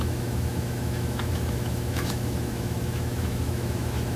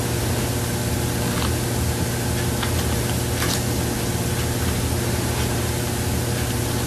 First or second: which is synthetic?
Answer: first